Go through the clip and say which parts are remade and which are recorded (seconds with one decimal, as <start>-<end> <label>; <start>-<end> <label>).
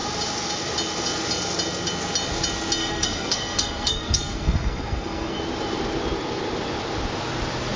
0.0-2.8 recorded; 2.8-5.4 remade; 5.4-7.8 recorded